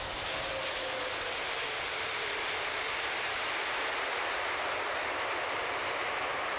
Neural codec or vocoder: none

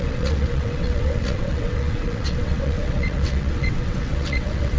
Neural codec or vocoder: vocoder, WaveNeXt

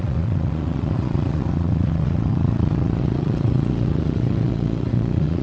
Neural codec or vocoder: vocoder, Vocos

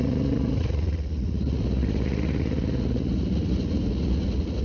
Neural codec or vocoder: vocoder, Vocos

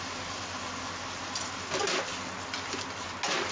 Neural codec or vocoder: none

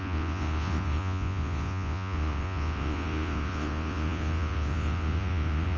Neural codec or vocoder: vocoder, Vocos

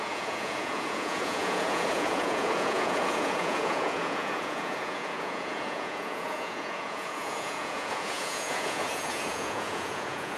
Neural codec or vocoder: vocoder, Vocos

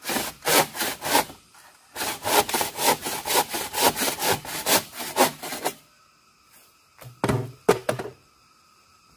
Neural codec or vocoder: none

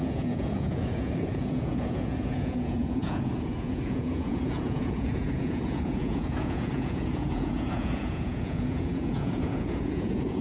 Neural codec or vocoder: vocoder, Vocos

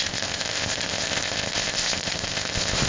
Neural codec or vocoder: codec, ZipCodec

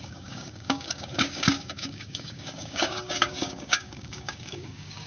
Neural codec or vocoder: codec, DAC